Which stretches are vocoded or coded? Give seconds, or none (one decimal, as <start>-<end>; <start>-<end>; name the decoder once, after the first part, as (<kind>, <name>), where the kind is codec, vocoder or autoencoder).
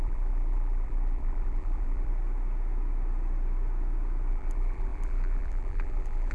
0.0-2.1 (vocoder, BigVGAN v2); 4.3-6.3